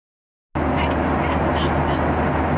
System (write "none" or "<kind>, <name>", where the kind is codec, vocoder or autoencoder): none